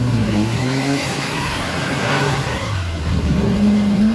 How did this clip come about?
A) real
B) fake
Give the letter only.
B